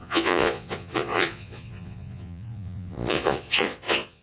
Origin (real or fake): fake